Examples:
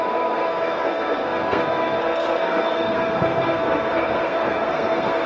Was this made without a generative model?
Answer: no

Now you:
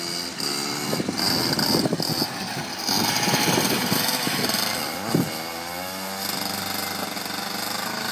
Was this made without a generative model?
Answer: yes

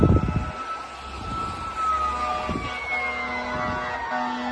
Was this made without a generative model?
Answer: yes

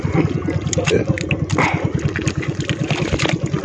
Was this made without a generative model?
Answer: yes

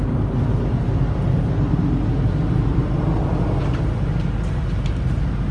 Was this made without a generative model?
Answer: yes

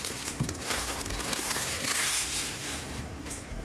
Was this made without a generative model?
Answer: no